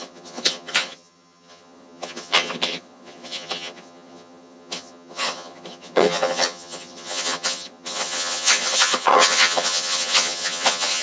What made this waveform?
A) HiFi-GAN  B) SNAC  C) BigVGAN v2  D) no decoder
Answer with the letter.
A